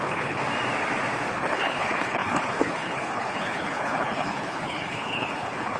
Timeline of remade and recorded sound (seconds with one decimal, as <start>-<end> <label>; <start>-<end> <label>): 0.0-0.4 remade; 0.4-1.3 recorded; 1.3-5.8 remade